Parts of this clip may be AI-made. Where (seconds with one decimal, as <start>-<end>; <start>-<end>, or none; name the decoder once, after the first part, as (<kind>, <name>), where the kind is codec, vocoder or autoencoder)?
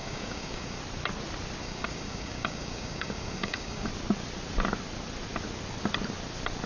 0.0-0.8 (codec, DAC); 1.6-3.9